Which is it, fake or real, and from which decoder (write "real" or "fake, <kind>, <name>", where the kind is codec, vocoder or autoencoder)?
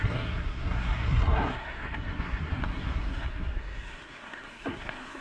fake, codec, SNAC